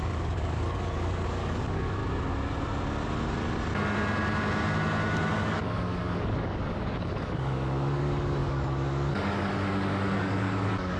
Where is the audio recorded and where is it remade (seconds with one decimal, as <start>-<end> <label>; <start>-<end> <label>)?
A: 0.0-2.0 remade; 2.0-5.4 recorded; 5.4-11.0 remade